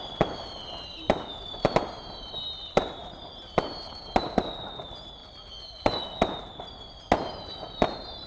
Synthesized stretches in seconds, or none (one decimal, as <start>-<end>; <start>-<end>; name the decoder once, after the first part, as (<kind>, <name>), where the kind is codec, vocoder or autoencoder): none